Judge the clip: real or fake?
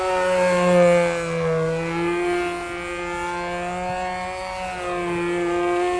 real